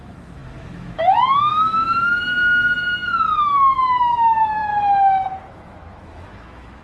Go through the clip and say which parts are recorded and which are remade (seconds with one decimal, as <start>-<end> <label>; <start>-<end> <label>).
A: 0.0-2.4 remade; 2.4-3.4 recorded; 3.4-4.7 remade; 4.7-5.5 recorded; 5.5-6.8 remade